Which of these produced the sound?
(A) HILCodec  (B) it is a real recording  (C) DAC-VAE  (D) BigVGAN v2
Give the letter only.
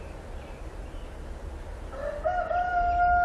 B